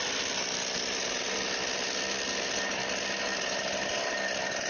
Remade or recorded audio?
recorded